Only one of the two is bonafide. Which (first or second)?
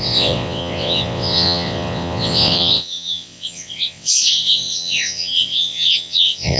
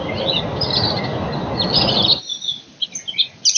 second